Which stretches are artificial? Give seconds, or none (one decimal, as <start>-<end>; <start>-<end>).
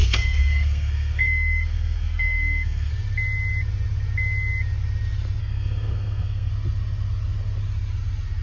0.0-2.9; 5.4-6.5